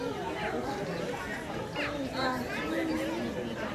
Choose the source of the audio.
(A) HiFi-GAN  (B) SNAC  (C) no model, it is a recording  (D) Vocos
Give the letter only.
C